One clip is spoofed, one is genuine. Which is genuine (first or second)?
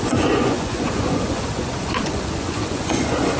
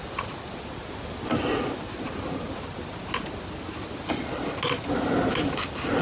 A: second